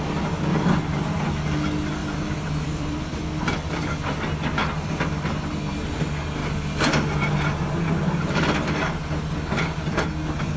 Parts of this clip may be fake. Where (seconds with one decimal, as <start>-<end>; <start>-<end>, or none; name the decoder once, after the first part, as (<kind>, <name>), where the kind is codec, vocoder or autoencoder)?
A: 0.5-1.2 (vocoder, BigVGAN v2); 2.0-3.2